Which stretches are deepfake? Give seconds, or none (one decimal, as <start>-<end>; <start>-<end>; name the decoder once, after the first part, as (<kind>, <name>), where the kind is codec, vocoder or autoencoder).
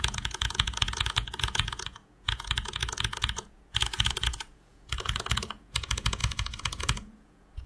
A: 0.0-7.7 (vocoder, Vocos)